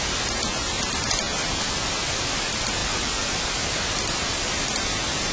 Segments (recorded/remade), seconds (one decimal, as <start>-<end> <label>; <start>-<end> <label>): 0.0-5.3 recorded